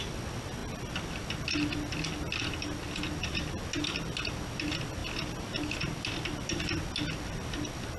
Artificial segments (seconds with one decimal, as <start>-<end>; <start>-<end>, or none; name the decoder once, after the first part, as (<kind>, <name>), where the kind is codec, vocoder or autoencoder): none